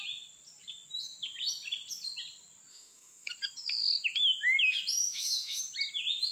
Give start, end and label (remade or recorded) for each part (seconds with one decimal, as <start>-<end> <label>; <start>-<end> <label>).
0.0-2.7 recorded; 2.7-3.3 remade; 3.3-5.0 recorded; 5.0-5.6 remade; 5.6-6.3 recorded